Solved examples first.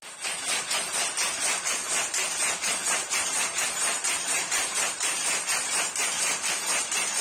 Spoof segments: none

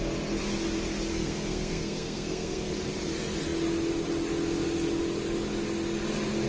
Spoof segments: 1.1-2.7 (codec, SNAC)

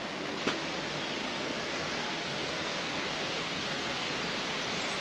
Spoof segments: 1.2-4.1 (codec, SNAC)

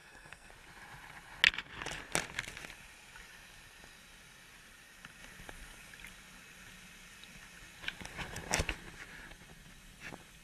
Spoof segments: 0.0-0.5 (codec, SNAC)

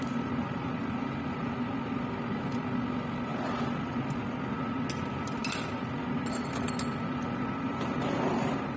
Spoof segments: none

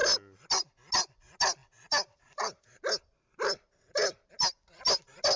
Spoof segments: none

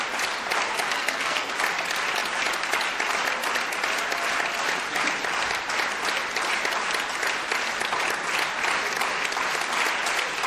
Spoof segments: 0.9-1.5 (codec, SNAC)